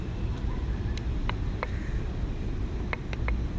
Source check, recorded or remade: recorded